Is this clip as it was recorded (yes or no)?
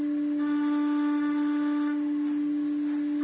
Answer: yes